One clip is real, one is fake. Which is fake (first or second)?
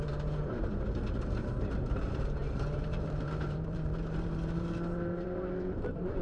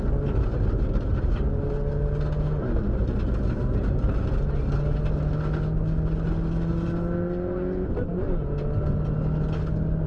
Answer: first